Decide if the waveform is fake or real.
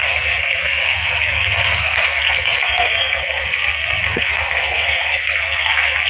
fake